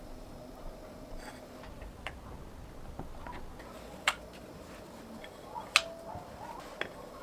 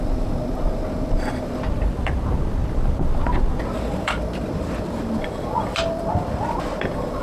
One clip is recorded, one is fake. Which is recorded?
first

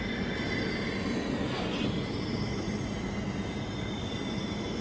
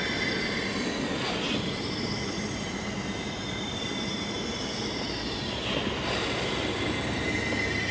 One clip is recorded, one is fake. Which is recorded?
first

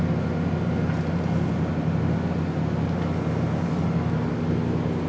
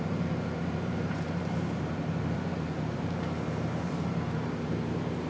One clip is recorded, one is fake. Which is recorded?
first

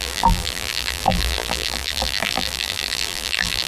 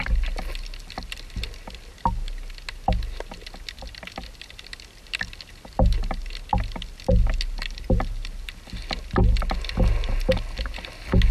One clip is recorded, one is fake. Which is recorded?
second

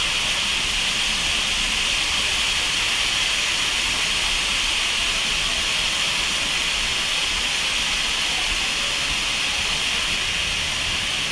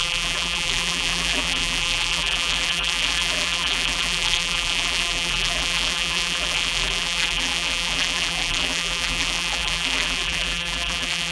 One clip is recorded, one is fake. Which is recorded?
first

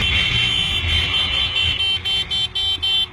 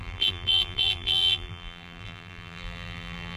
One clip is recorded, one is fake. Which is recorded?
first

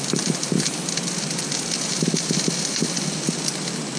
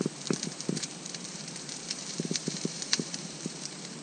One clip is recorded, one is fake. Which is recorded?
first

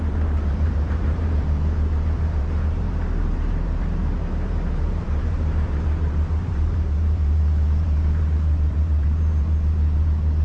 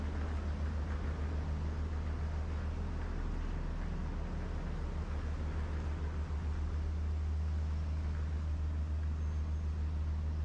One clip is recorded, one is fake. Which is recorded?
second